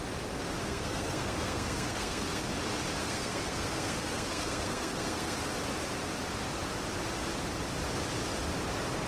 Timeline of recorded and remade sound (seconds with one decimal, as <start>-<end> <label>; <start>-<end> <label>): 0.0-0.6 recorded; 0.6-2.4 remade; 2.4-3.0 recorded; 3.0-5.4 remade; 5.4-9.1 recorded